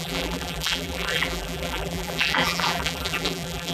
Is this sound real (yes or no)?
no